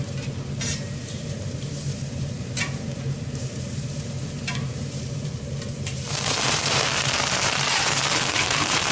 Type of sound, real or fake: fake